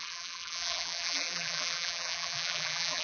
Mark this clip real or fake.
fake